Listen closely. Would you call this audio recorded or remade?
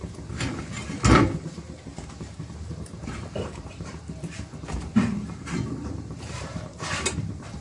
remade